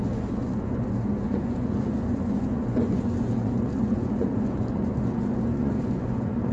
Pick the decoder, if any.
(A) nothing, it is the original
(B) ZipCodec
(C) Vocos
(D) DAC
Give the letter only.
C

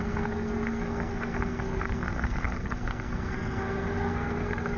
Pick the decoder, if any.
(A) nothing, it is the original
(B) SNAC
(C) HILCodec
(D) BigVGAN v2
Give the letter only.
B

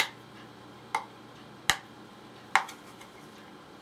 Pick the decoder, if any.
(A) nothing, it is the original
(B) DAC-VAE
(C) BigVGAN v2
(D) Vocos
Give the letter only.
A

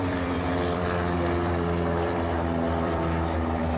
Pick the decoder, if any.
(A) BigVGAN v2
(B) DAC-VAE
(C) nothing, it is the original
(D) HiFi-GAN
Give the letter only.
A